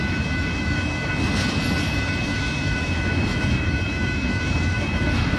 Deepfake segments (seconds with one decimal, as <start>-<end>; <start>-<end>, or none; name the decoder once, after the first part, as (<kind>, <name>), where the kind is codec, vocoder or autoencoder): 0.0-1.1 (autoencoder, DAC-VAE); 2.2-5.4